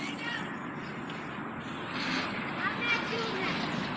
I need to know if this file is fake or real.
real